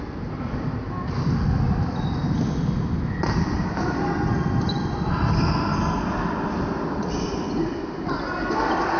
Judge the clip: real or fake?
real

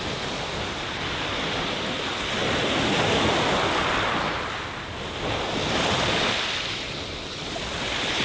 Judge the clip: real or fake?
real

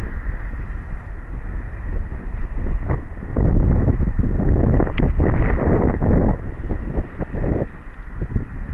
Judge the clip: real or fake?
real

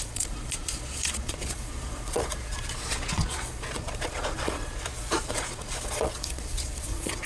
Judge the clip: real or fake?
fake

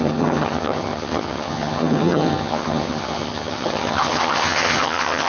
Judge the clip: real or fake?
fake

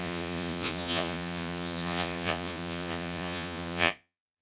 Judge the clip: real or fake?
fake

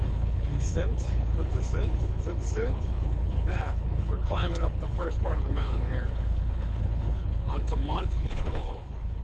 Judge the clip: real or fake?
fake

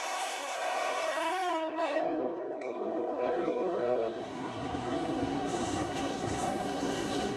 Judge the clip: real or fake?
fake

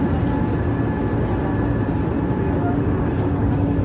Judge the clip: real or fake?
real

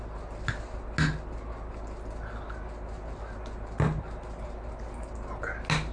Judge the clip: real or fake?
real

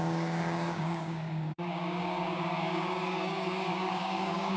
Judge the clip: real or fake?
fake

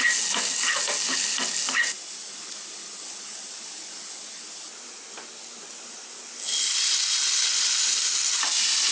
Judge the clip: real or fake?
real